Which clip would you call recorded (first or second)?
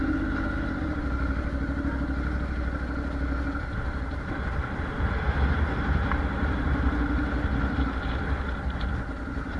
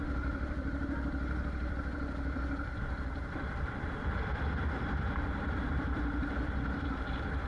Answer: first